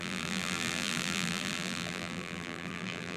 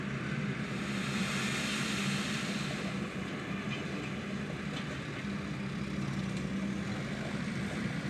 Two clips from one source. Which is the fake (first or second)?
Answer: first